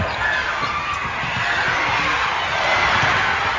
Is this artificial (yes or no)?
no